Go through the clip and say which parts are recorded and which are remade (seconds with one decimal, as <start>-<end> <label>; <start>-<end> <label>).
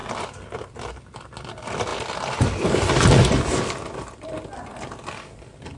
0.0-5.8 recorded